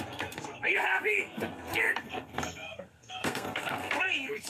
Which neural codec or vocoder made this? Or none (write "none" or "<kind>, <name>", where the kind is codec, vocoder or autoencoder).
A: codec, SNAC